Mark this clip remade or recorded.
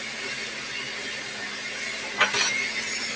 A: recorded